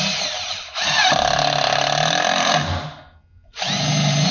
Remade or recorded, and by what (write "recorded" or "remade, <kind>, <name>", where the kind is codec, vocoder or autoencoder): recorded